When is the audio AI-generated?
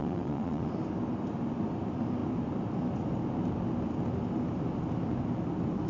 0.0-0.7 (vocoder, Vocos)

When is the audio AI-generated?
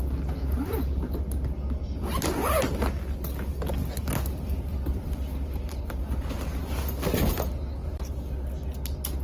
3.8-6.9 (vocoder, BigVGAN v2); 7.8-8.3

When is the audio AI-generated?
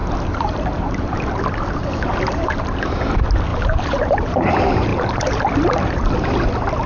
0.0-1.4 (vocoder, BigVGAN v2); 3.5-4.5; 4.9-6.1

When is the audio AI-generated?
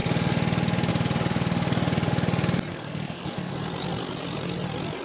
2.7-3.5 (codec, SNAC)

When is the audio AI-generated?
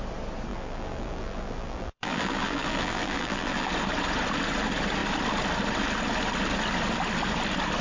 0.5-3.7 (vocoder, BigVGAN v2)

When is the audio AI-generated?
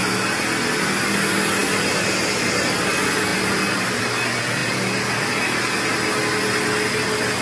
3.3-4.0 (vocoder, BigVGAN v2)